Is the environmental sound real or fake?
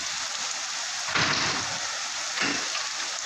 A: real